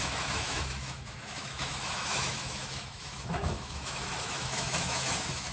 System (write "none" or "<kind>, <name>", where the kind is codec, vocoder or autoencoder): autoencoder, DAC-VAE